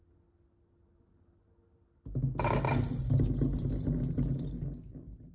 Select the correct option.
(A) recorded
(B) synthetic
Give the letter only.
A